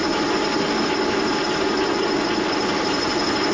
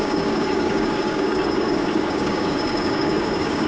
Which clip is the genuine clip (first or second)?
first